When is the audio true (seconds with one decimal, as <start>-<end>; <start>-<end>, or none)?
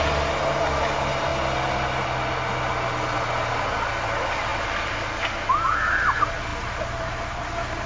0.0-7.9